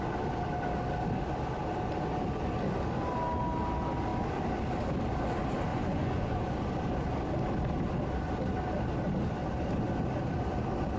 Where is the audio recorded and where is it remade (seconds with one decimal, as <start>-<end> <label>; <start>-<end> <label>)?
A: 0.0-5.7 recorded; 5.7-6.4 remade; 6.4-11.0 recorded